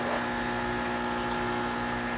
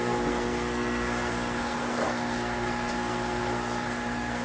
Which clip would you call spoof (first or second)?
second